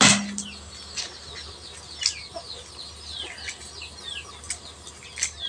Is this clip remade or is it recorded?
recorded